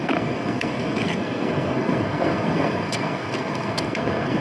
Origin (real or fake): fake